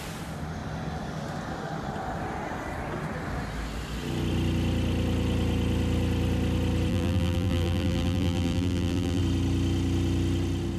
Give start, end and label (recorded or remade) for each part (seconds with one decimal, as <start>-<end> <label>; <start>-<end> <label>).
0.0-6.9 recorded; 6.9-9.2 remade; 9.2-10.8 recorded